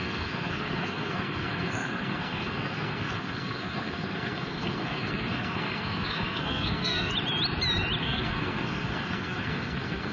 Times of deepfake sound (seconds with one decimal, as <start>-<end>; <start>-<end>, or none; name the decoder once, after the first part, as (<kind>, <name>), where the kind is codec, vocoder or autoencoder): 0.0-7.1 (codec, SNAC); 8.0-10.1